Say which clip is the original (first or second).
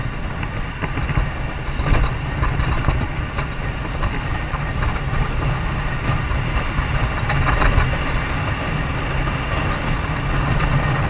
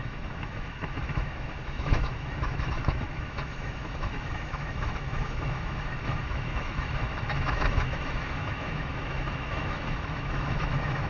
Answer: first